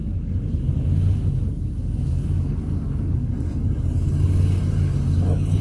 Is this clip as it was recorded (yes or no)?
no